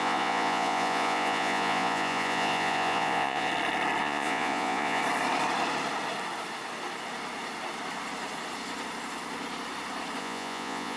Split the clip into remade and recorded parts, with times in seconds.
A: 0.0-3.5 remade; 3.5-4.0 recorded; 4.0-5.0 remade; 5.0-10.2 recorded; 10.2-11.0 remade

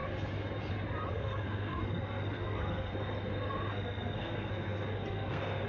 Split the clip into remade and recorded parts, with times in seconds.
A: 0.0-1.1 recorded; 1.1-2.9 remade; 2.9-3.7 recorded; 3.7-5.7 remade